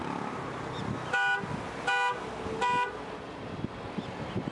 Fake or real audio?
real